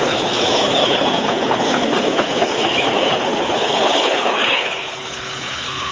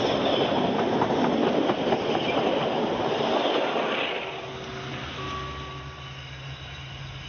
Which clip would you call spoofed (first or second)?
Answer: first